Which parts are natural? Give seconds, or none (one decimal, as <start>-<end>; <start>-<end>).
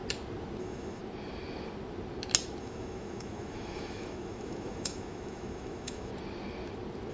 0.0-0.6; 1.0-2.6; 6.1-7.1